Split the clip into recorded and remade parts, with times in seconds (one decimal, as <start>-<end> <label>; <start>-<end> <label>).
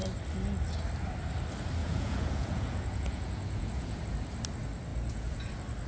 0.0-1.8 recorded; 1.8-4.0 remade; 4.0-4.9 recorded; 4.9-5.5 remade; 5.5-5.9 recorded